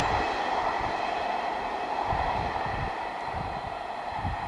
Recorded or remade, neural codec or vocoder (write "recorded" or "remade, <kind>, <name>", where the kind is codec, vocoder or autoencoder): recorded